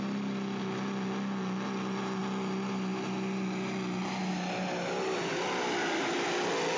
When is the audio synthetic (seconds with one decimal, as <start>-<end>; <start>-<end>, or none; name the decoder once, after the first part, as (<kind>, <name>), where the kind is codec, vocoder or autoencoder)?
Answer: none